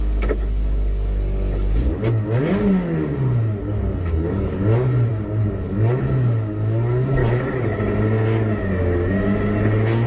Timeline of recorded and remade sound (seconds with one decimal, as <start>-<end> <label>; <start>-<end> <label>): 0.0-3.1 remade; 3.1-3.6 recorded; 3.6-7.2 remade; 7.2-10.1 recorded